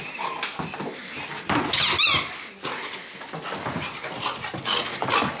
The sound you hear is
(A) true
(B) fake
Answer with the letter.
A